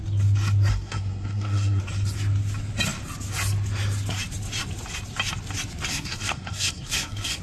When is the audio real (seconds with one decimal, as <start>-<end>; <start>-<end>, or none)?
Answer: 0.0-0.7; 1.8-5.9